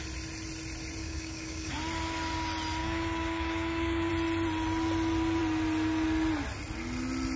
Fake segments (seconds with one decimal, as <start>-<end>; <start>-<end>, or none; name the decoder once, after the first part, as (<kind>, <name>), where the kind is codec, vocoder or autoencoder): 1.0-1.7 (codec, DAC); 2.8-4.1